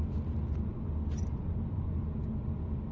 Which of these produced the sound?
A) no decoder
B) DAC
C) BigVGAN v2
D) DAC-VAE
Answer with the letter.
A